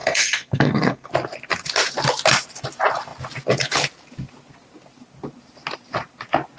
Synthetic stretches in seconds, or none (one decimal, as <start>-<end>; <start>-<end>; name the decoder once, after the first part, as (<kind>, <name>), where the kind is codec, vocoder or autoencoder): 0.0-1.1 (codec, SNAC)